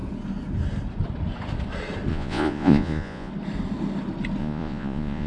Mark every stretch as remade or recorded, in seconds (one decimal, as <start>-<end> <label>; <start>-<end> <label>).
0.0-2.1 recorded; 2.1-3.3 remade; 3.3-4.4 recorded; 4.4-5.3 remade